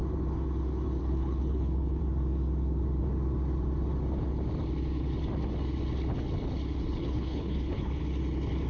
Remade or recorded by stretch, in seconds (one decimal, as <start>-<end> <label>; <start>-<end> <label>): 0.0-1.0 recorded; 1.0-2.0 remade; 2.0-7.0 recorded; 7.0-8.0 remade; 8.0-8.7 recorded